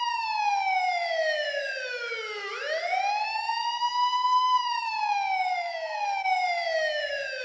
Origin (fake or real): fake